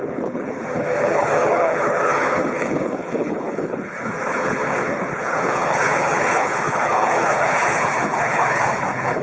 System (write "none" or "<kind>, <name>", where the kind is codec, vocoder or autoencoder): codec, HILCodec